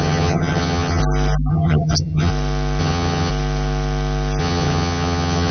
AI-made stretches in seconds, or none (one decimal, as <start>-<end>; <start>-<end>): 0.0-1.0; 1.5-2.3; 2.8-3.3; 4.4-5.5